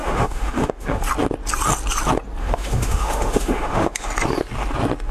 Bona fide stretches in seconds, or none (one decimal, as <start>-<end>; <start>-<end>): 1.0-2.4; 4.1-5.1